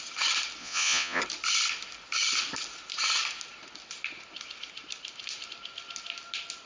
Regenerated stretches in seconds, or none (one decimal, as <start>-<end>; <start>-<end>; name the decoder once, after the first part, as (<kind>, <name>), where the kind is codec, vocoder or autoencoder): 0.6-1.2 (vocoder, Vocos)